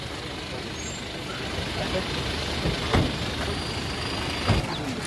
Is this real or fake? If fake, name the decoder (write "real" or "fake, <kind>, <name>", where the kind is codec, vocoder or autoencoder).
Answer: real